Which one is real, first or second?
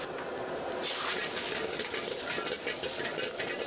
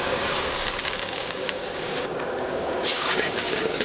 first